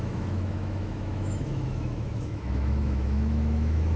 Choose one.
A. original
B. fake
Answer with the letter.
B